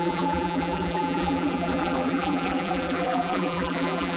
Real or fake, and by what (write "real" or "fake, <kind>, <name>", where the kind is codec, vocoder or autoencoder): fake, vocoder, BigVGAN v2